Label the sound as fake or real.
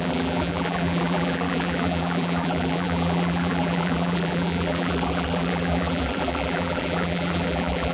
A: fake